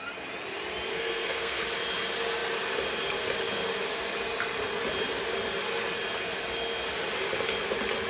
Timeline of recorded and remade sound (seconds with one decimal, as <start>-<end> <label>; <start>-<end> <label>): 0.0-0.9 recorded; 0.9-1.6 remade; 1.6-8.1 recorded